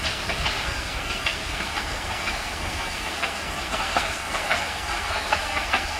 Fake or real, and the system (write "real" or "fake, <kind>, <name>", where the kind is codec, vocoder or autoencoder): fake, codec, SNAC